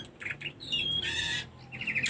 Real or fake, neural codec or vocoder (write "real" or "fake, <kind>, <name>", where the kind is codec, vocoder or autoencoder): real